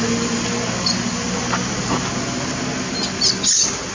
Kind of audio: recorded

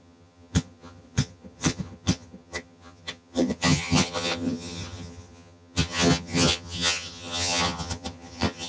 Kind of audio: remade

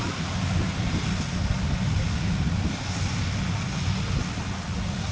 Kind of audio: recorded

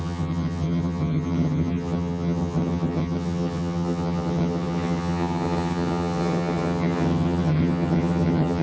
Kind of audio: remade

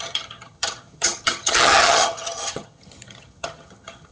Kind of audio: remade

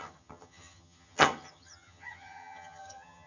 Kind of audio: remade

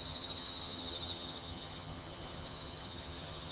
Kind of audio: remade